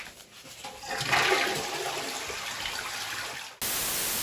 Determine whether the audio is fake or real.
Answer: real